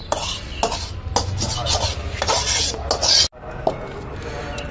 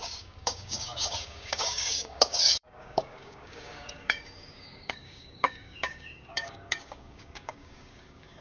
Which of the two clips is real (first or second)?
first